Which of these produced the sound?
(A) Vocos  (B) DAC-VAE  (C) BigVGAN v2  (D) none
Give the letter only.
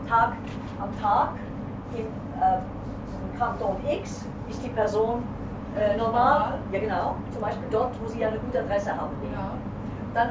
D